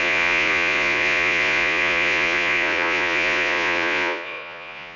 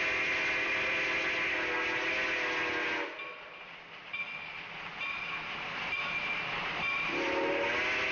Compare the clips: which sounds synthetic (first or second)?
first